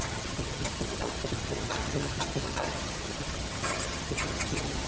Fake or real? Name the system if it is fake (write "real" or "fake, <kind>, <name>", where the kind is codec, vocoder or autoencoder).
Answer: fake, vocoder, HiFi-GAN